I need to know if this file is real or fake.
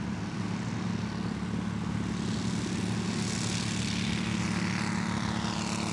real